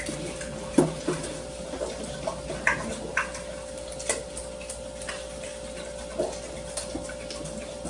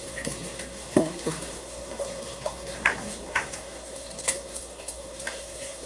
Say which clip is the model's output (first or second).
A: second